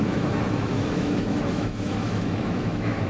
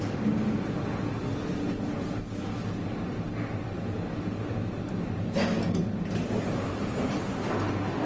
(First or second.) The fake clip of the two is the first